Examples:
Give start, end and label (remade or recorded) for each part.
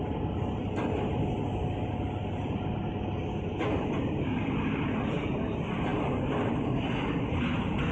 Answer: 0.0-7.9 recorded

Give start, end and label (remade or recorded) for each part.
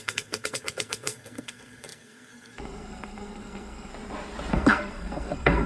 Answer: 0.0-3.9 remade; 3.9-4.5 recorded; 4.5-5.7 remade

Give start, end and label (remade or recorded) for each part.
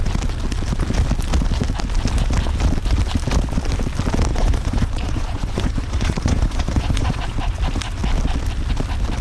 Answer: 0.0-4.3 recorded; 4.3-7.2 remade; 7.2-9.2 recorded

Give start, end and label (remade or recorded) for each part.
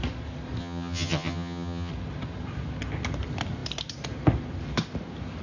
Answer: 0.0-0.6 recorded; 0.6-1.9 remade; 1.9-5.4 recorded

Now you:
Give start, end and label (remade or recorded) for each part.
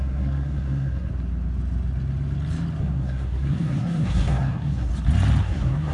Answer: 0.0-1.1 remade; 1.1-2.8 recorded; 2.8-4.9 remade; 4.9-5.4 recorded; 5.4-5.9 remade